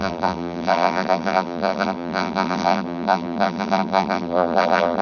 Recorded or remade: remade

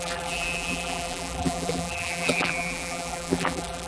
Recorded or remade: remade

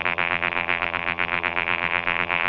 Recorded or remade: remade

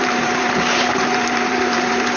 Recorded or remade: remade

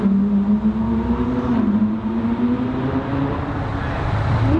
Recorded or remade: recorded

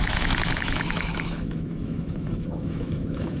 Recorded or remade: remade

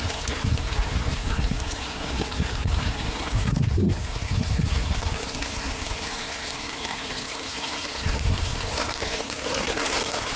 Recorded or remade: remade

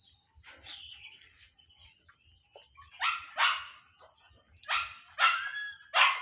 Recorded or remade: recorded